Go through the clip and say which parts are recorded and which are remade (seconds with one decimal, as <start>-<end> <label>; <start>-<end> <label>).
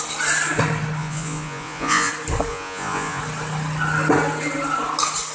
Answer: 0.0-1.0 recorded; 1.0-2.1 remade; 2.1-2.5 recorded; 2.5-3.2 remade; 3.2-5.3 recorded